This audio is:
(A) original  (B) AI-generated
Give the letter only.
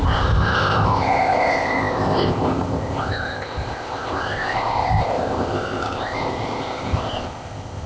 B